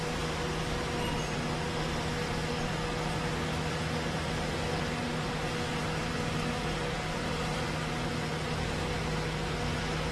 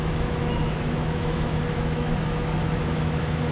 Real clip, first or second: first